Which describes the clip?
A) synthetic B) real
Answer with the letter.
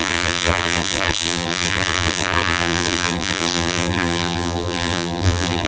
A